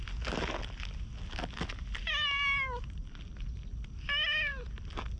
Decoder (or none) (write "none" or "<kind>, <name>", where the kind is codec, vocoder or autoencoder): none